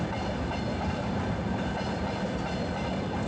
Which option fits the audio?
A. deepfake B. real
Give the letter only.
B